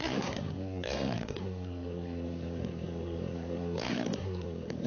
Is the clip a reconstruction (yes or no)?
yes